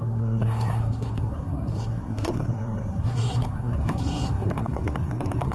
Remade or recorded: remade